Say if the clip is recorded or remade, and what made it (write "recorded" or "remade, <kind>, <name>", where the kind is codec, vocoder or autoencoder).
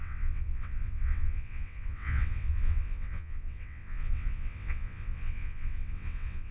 remade, vocoder, WaveNeXt